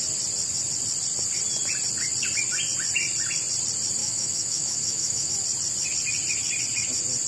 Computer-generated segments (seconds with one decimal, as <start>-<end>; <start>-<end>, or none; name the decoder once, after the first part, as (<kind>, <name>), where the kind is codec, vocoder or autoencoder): 4.0-5.3 (autoencoder, DAC-VAE)